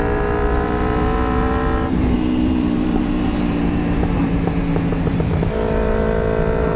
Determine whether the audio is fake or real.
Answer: fake